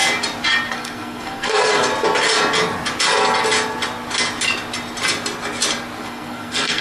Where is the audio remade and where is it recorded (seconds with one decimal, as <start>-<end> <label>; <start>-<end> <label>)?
0.0-0.7 recorded; 0.7-1.9 remade; 1.9-6.0 recorded; 6.0-6.8 remade